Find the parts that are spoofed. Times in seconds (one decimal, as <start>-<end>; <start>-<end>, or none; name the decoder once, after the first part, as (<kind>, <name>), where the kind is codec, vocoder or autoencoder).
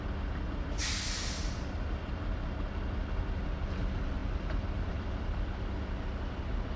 0.8-2.0 (vocoder, BigVGAN v2)